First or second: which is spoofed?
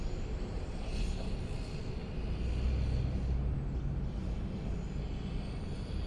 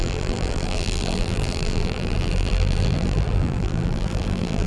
second